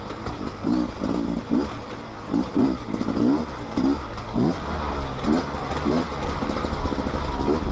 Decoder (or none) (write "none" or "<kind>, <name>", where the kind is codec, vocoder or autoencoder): none